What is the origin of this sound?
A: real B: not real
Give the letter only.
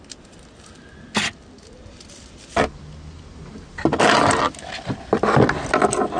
A